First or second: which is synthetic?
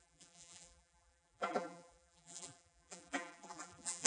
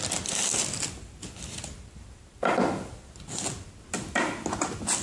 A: first